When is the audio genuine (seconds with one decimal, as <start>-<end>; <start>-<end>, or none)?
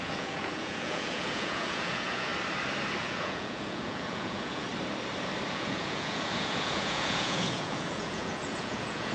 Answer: 2.3-3.0; 4.7-5.5